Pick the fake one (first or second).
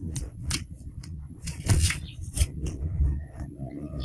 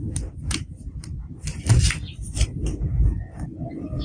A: first